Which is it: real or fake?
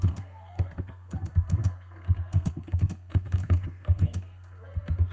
fake